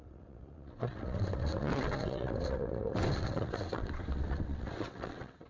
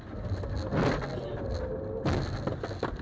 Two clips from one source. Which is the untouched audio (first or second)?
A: second